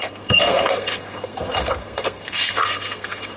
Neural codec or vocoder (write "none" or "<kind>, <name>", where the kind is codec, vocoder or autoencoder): codec, SNAC